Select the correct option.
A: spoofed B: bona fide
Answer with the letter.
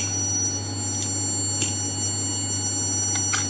B